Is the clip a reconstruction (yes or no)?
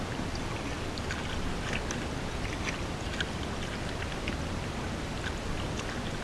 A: no